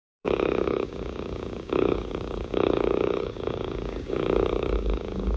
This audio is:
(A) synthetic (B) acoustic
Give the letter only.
A